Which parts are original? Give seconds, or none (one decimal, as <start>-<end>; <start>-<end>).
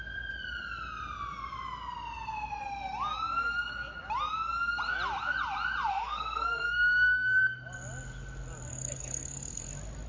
0.0-5.9; 7.4-8.7; 9.7-10.1